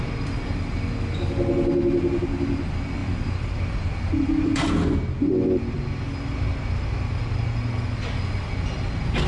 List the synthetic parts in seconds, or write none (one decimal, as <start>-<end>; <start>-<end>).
none